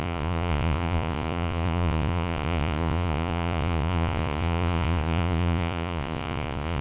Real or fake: fake